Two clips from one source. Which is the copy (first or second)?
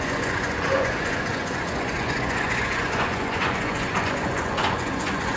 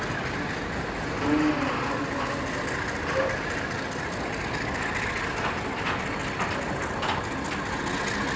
first